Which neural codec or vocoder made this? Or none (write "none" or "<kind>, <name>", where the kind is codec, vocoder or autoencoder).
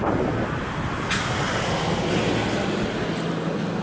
none